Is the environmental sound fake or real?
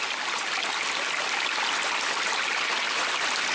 real